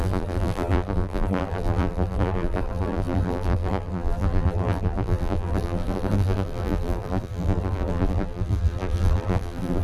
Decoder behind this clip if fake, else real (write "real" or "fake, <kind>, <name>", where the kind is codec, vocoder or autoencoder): fake, vocoder, BigVGAN v2